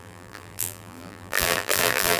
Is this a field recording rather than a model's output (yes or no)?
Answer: no